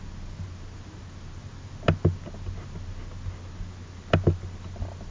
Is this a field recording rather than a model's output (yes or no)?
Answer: yes